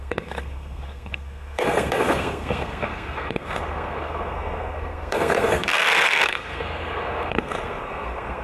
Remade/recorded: remade